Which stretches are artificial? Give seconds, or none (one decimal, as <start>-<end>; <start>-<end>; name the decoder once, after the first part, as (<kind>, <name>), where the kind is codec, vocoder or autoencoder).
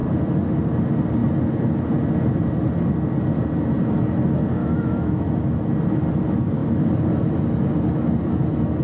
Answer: 4.6-5.2 (autoencoder, DAC-VAE)